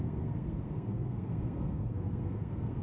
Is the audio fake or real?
fake